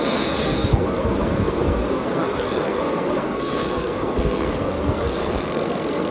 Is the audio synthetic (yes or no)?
yes